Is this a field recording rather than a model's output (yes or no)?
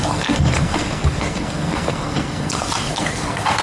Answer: no